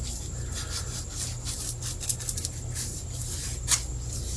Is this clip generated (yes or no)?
no